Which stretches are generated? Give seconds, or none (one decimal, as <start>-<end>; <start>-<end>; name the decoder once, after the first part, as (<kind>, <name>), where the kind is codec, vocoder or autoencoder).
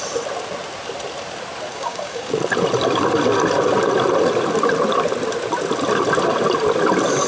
1.7-2.3 (codec, DAC)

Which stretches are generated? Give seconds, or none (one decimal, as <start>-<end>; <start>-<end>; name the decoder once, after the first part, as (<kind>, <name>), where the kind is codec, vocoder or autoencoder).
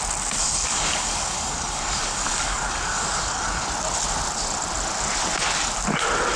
0.4-3.7 (codec, DAC)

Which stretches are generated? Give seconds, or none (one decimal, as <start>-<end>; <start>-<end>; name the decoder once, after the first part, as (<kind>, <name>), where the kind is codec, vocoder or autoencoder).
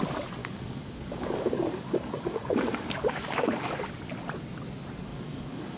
0.4-3.9 (codec, DAC); 5.1-5.8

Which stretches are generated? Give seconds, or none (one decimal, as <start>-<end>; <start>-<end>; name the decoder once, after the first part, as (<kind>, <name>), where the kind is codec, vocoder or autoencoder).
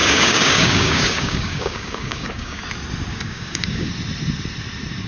0.0-2.6 (codec, DAC); 3.1-3.9